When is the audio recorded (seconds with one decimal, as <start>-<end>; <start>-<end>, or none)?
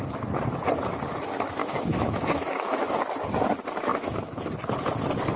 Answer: 0.0-1.6; 2.9-3.9; 4.5-5.4